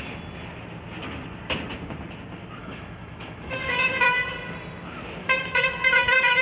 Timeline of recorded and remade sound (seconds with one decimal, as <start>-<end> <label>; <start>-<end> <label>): 0.0-2.6 recorded; 2.6-4.3 remade; 4.3-5.2 recorded; 5.2-6.4 remade